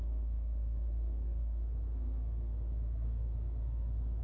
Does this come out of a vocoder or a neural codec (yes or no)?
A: yes